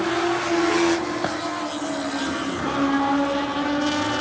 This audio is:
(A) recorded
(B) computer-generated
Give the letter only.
A